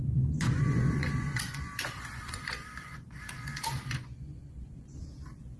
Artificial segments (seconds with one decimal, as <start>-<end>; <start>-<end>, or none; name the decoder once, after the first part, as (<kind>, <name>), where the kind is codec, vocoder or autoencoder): 0.0-5.6 (vocoder, Vocos)